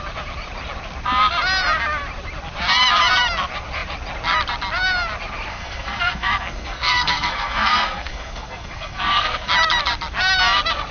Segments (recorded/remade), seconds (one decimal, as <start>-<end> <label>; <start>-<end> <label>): 0.0-5.5 recorded; 5.5-9.5 remade; 9.5-10.9 recorded